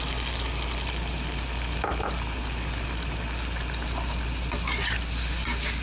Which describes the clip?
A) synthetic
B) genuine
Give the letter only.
B